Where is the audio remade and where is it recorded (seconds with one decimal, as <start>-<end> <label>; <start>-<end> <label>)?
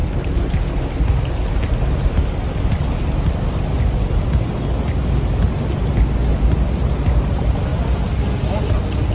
0.0-9.1 recorded